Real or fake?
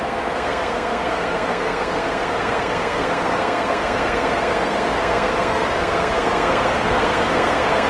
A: fake